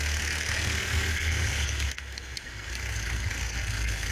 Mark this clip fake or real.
fake